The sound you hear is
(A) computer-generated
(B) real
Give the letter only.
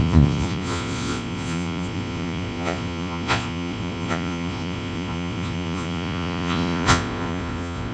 A